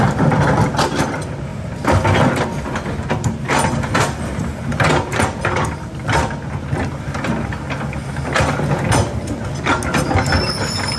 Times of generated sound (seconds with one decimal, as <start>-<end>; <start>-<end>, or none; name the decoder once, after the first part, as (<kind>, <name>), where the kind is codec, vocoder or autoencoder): none